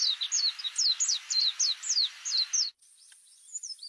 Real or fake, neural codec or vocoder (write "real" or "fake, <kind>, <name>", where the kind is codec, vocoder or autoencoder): real